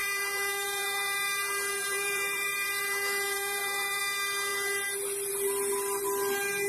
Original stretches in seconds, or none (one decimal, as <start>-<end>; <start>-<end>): 4.0-6.7